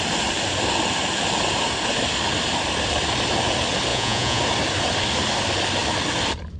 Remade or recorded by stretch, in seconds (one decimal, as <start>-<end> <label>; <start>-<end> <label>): 0.0-3.9 recorded; 3.9-4.4 remade; 4.4-6.6 recorded

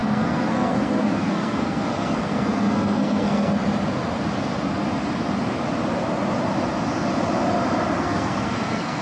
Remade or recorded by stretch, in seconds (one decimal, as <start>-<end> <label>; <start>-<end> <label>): 0.0-3.6 remade; 3.6-8.0 recorded; 8.0-9.0 remade

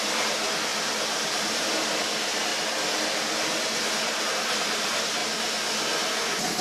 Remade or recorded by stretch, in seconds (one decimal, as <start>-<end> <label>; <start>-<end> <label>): 0.0-2.5 remade; 2.5-4.2 recorded; 4.2-5.2 remade; 5.2-6.6 recorded

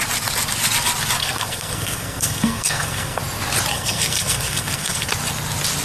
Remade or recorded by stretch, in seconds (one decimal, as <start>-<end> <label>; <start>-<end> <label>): 0.0-1.2 recorded; 1.2-3.2 remade; 3.2-3.7 recorded; 3.7-5.1 remade; 5.1-5.8 recorded

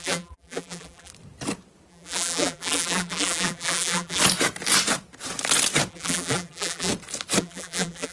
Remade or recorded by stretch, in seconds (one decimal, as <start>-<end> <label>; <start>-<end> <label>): 0.0-1.1 remade; 1.1-1.9 recorded; 1.9-4.2 remade; 4.2-5.9 recorded; 5.9-6.9 remade; 6.9-7.4 recorded; 7.4-8.1 remade

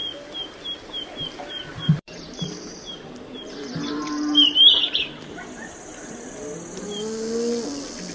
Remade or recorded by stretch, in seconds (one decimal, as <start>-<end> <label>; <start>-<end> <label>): 0.0-1.7 recorded; 1.7-6.3 remade; 6.3-8.1 recorded

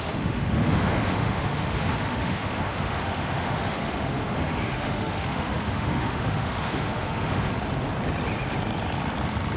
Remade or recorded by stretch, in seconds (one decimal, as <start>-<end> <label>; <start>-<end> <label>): 0.0-7.5 remade; 7.5-9.6 recorded